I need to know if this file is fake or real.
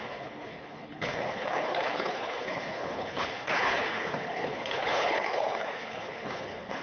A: fake